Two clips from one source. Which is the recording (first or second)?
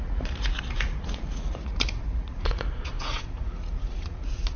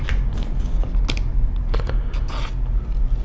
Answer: second